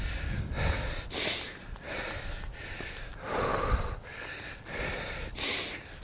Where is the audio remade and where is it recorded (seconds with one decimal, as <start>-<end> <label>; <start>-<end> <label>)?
0.0-6.0 recorded